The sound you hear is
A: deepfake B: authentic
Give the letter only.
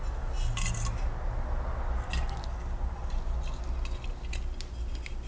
B